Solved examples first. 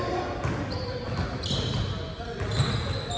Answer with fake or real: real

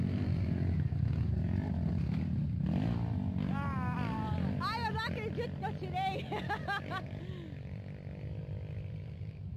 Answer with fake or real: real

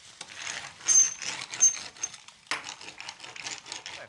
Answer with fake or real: real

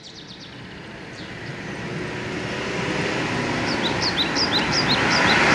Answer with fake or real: real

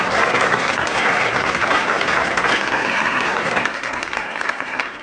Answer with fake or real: fake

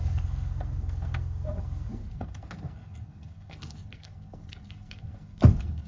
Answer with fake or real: fake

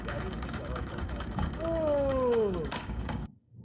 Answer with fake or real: fake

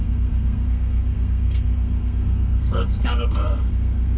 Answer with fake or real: fake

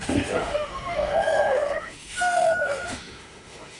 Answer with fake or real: fake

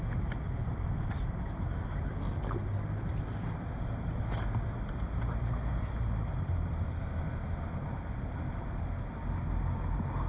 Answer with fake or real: real